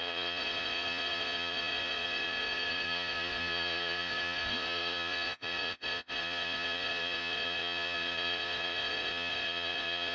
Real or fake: fake